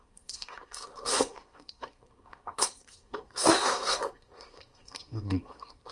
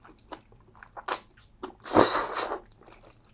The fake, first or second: first